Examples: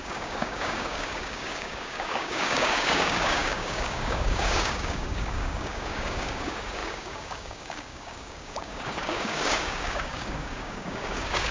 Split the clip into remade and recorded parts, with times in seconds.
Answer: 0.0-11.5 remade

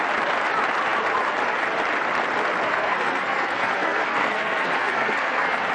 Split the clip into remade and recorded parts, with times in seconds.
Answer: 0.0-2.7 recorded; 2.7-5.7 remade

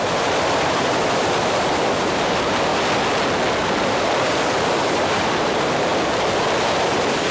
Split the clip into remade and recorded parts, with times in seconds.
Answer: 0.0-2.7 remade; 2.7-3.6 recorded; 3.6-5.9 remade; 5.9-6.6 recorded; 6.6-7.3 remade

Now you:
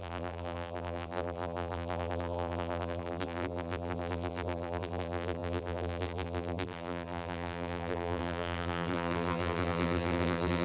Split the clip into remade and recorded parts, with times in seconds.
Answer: 0.0-10.6 remade

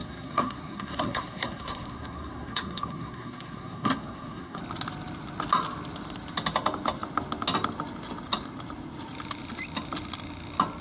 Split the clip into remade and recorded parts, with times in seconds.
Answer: 0.0-4.6 remade; 4.6-10.8 recorded